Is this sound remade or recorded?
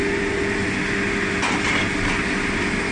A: recorded